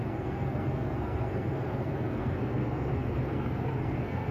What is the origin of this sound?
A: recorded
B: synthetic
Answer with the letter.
B